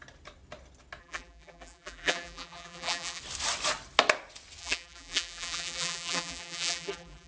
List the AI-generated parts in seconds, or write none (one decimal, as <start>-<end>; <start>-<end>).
1.0-3.2; 4.6-7.3

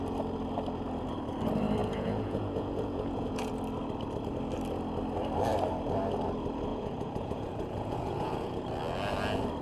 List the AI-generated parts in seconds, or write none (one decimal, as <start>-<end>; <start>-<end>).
1.8-3.5; 6.7-8.6

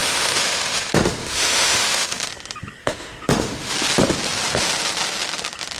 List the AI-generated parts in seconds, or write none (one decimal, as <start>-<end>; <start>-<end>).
0.0-2.3; 2.8-3.7

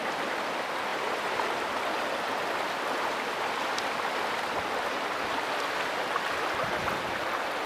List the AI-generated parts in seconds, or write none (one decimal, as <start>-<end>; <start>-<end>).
none

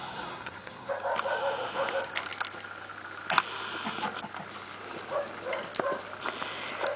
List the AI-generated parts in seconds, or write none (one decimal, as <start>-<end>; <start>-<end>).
0.0-0.9

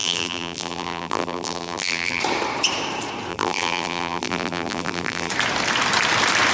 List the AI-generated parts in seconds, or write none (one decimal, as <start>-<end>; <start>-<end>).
0.0-2.2; 3.3-5.3

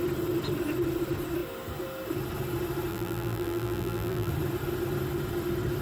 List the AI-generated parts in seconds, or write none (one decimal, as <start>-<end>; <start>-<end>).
2.9-4.3

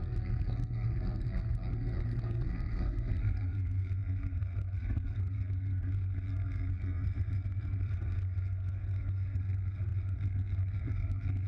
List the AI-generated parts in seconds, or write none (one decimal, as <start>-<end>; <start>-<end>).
0.0-11.5